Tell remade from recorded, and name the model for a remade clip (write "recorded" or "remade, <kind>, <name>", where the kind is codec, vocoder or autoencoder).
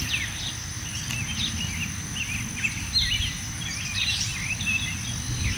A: recorded